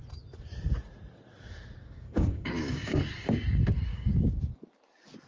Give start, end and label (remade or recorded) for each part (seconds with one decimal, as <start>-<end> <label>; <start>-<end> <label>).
0.0-1.8 recorded; 1.8-3.0 remade; 3.0-3.9 recorded; 3.9-4.4 remade; 4.4-5.3 recorded